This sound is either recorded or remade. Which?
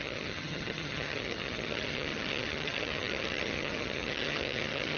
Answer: remade